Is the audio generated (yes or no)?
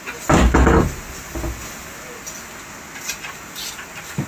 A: no